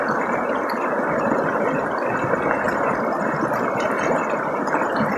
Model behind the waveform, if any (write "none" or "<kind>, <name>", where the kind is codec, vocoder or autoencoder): none